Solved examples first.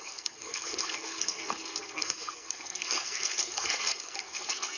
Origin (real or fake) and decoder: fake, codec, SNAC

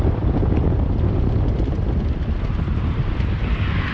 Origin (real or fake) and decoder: real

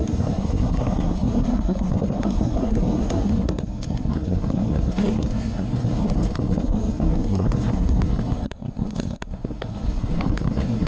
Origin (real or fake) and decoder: fake, codec, SNAC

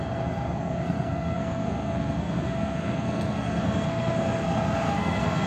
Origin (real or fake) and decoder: fake, codec, SNAC